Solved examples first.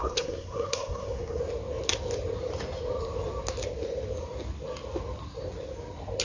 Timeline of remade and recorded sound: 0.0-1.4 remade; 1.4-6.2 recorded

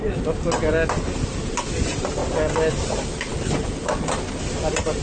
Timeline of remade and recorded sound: 0.0-5.0 recorded

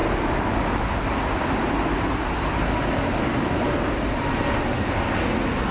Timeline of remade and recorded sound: 0.0-5.7 recorded

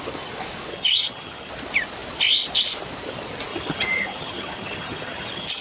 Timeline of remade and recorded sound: 0.0-0.7 recorded; 0.7-1.5 remade; 1.5-3.5 recorded; 3.5-5.6 remade

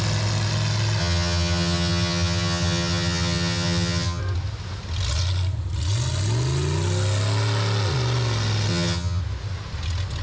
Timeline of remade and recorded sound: 0.0-1.0 recorded; 1.0-4.2 remade; 4.2-8.7 recorded; 8.7-9.2 remade; 9.2-10.2 recorded

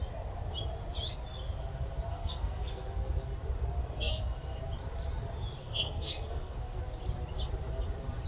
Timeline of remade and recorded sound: 0.0-2.1 recorded; 2.1-3.2 remade; 3.2-3.8 recorded; 3.8-4.6 remade; 4.6-5.6 recorded; 5.6-6.8 remade; 6.8-8.3 recorded

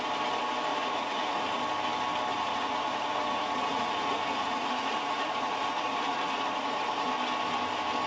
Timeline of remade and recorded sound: 0.0-0.7 recorded; 0.7-1.6 remade; 1.6-2.3 recorded; 2.3-7.1 remade; 7.1-8.1 recorded

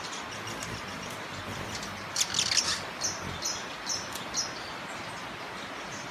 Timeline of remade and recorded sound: 0.0-0.9 recorded; 0.9-1.4 remade; 1.4-6.1 recorded